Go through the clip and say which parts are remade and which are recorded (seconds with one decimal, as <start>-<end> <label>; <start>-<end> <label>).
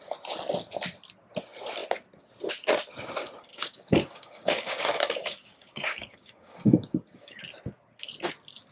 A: 0.0-3.5 recorded; 3.5-7.4 remade; 7.4-8.7 recorded